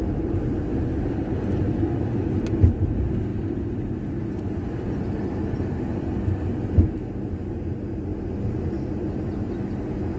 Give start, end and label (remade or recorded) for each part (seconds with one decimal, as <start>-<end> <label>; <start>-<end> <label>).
0.0-10.2 recorded